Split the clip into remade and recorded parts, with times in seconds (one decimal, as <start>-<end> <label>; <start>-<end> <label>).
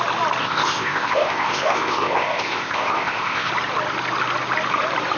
0.0-0.4 recorded; 0.4-3.5 remade; 3.5-5.2 recorded